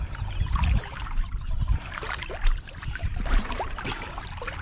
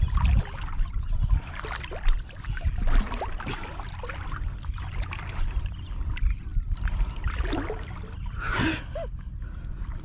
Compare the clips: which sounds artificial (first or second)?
first